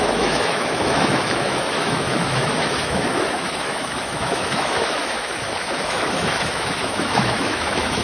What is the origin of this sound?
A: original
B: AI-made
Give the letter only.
B